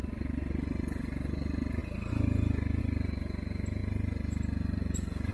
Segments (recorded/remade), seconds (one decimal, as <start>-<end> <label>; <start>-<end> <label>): 0.0-5.3 recorded